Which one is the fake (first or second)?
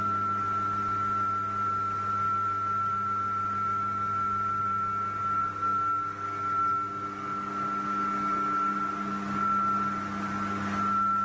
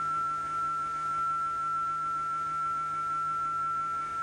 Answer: second